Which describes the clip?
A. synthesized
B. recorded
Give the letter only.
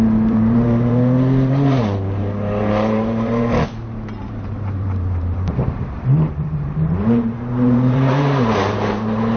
A